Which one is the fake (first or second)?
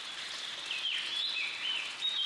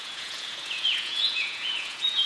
second